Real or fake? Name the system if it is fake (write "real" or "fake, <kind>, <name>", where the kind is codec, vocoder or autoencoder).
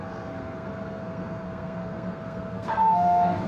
fake, codec, SNAC